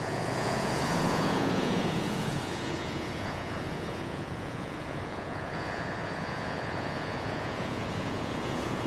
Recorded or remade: remade